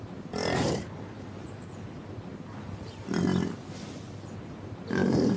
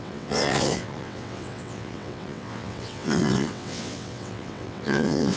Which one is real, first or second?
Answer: first